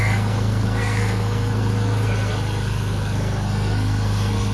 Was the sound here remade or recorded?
remade